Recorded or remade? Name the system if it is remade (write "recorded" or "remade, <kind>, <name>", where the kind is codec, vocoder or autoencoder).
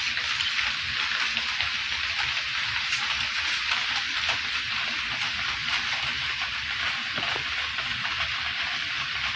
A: recorded